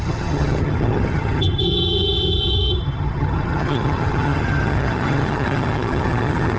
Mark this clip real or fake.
fake